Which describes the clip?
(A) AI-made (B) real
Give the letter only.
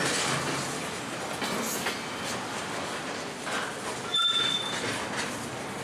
B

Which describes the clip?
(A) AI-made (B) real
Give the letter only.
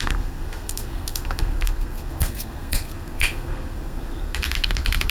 A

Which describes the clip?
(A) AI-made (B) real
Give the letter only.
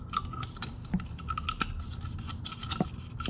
B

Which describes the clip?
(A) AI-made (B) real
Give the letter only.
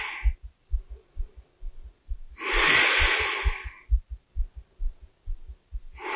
B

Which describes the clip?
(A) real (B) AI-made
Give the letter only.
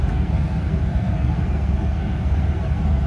B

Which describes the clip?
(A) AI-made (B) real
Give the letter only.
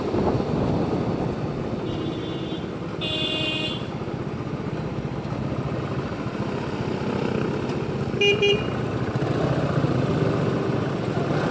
B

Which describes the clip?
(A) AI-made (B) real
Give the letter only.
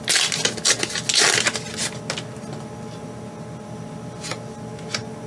B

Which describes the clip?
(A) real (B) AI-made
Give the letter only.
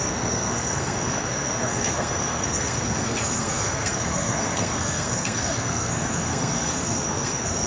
B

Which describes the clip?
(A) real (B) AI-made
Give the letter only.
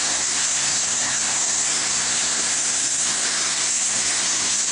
B